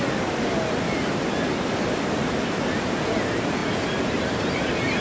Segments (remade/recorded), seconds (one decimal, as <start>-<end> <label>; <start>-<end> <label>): 0.0-5.0 recorded